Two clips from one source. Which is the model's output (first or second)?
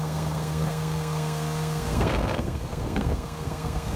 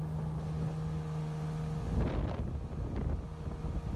first